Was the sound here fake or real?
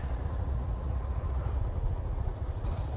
fake